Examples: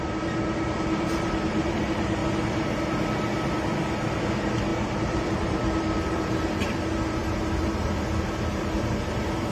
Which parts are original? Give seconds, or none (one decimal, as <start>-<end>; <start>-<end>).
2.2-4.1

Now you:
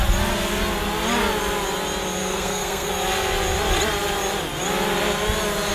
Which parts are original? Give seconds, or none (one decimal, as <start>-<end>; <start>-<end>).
0.0-2.2; 2.9-5.7

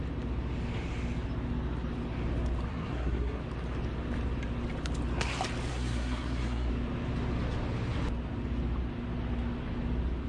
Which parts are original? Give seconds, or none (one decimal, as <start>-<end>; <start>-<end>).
0.0-2.7; 3.4-5.7; 6.7-10.3

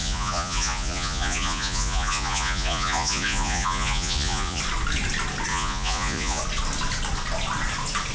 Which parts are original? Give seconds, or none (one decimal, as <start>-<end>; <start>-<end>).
4.6-5.5; 6.4-8.1